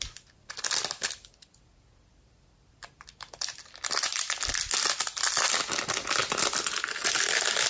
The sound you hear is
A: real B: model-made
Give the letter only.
A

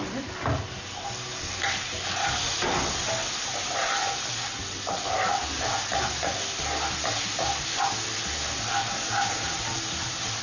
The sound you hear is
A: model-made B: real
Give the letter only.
B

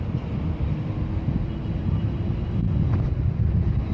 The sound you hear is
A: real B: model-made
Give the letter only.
A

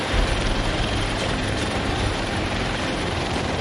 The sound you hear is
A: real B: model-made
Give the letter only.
B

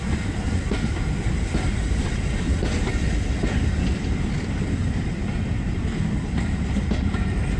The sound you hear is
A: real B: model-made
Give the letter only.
B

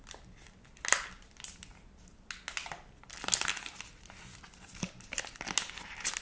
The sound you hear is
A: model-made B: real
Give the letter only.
B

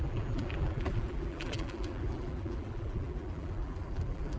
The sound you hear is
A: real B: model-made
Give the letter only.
B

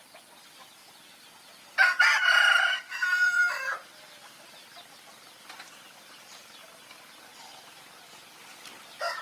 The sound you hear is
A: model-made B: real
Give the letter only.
A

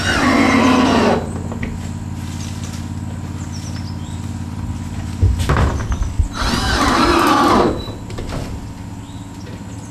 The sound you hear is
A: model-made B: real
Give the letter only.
B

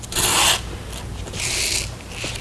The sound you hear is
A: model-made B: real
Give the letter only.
B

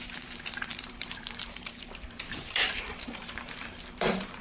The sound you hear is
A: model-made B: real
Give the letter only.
A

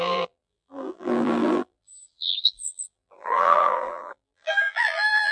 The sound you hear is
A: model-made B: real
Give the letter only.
A